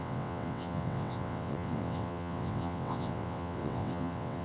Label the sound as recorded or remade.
remade